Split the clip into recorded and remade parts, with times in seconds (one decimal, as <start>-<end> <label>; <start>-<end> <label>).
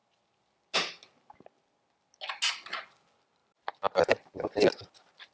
0.0-5.3 recorded